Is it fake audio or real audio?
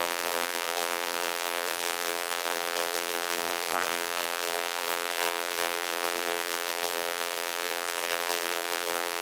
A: fake